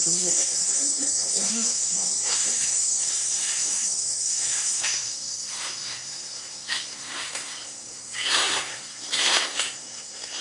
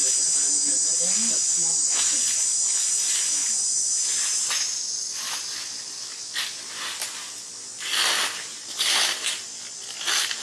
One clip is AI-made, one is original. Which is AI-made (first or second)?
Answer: first